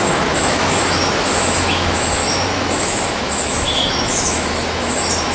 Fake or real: fake